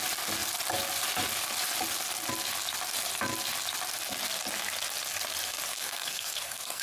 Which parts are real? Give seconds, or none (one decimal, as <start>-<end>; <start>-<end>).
0.0-5.7